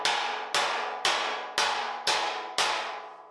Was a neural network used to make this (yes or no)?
no